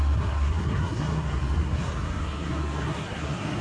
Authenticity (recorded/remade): remade